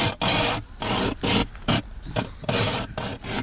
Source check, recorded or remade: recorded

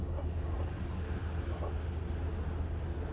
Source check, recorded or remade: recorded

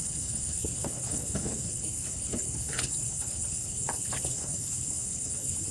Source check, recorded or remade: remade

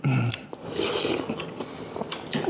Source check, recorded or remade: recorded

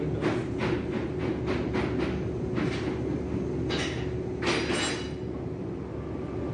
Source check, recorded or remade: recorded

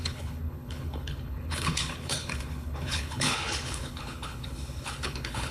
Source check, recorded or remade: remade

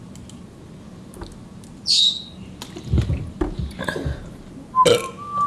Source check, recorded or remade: recorded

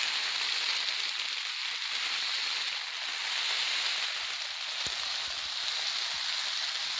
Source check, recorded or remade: recorded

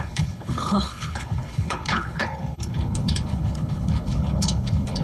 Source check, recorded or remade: remade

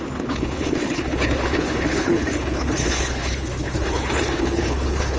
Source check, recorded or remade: remade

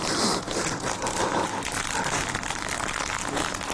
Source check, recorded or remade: recorded